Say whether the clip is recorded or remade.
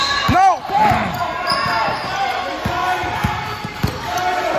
recorded